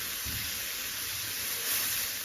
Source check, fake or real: fake